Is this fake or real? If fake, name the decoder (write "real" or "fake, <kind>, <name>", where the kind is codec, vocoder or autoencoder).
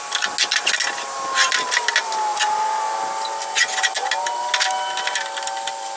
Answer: real